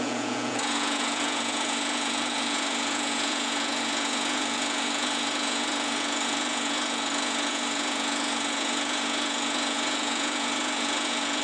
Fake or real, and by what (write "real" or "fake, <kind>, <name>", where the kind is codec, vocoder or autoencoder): fake, vocoder, Vocos